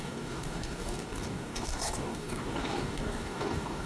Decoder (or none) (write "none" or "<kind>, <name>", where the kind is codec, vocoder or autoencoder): codec, DAC